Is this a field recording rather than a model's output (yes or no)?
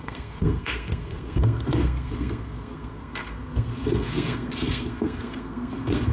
no